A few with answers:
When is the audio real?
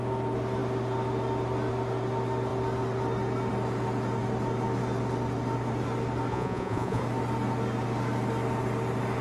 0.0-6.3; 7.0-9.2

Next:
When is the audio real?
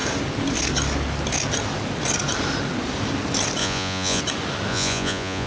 0.0-3.6; 4.2-4.7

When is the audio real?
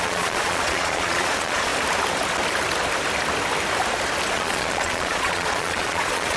1.7-4.3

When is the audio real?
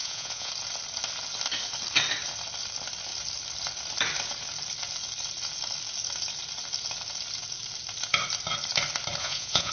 0.5-9.2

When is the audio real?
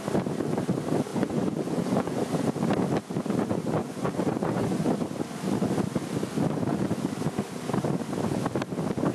0.0-1.1; 2.2-3.8; 4.8-9.1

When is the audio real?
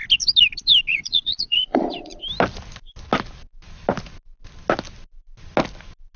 0.0-0.9; 2.2-6.2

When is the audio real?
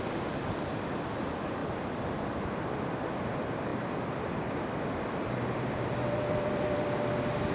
0.0-7.5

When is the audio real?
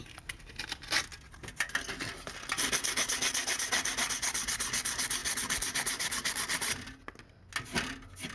0.0-8.3